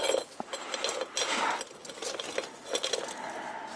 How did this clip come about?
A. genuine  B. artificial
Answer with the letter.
A